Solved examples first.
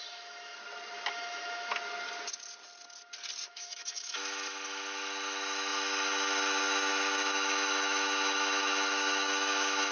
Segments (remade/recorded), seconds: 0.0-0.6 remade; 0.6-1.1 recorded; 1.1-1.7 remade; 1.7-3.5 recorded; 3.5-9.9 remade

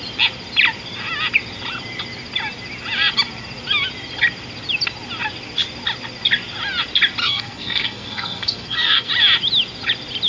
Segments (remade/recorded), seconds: 0.0-7.2 recorded; 7.2-9.1 remade; 9.1-10.3 recorded